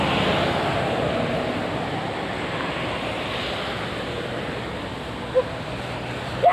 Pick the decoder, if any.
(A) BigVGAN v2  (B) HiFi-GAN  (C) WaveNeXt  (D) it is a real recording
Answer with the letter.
D